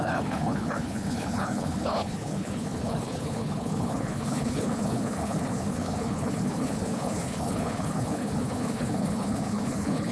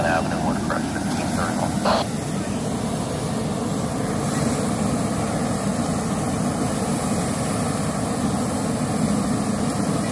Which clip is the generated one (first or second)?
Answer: first